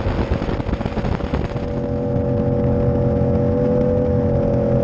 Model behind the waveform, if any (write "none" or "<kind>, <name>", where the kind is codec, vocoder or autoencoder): none